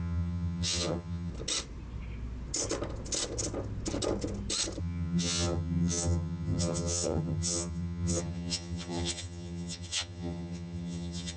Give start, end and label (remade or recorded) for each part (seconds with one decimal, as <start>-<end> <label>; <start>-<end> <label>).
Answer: 0.0-1.3 remade; 1.3-4.8 recorded; 4.8-11.4 remade